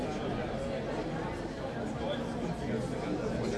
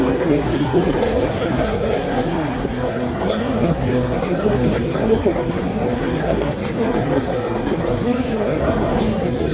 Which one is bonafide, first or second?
first